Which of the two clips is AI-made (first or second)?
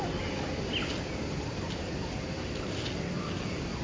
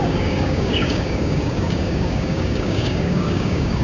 second